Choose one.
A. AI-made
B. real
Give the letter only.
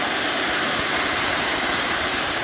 A